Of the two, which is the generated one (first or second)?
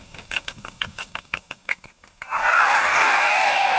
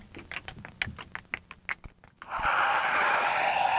first